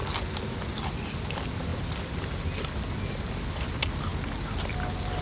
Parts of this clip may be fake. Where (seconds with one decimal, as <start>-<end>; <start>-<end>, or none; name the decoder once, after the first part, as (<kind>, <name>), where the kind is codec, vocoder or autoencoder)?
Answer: none